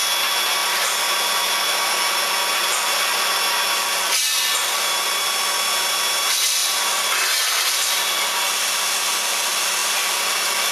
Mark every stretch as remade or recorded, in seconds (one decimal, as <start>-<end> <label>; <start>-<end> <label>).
0.0-0.6 recorded; 0.6-5.1 remade; 5.1-6.6 recorded; 6.6-7.7 remade; 7.7-9.8 recorded; 9.8-10.7 remade